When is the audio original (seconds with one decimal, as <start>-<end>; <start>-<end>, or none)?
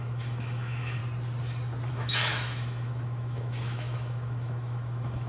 1.0-1.9